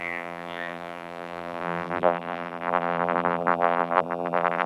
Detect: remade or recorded remade